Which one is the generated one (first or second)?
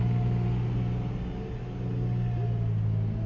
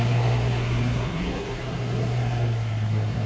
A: second